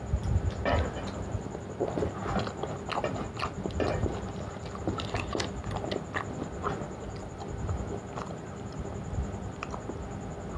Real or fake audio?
real